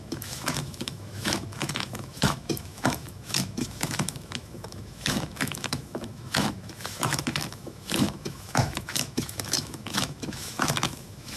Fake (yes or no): yes